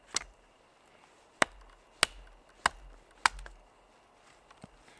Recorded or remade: recorded